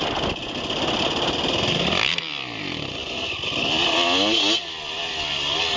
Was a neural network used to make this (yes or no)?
no